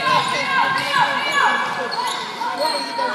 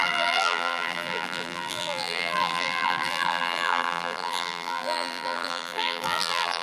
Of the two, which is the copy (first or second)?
second